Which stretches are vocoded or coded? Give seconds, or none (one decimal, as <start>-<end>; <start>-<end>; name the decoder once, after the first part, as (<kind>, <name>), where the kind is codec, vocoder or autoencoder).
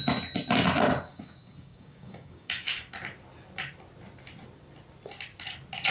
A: 1.1-2.9 (codec, DAC)